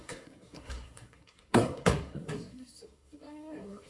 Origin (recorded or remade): remade